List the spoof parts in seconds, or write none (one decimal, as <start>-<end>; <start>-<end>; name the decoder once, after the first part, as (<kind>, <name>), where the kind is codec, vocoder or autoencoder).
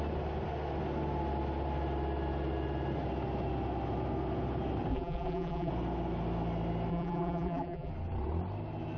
4.9-5.7 (vocoder, BigVGAN v2); 6.9-7.9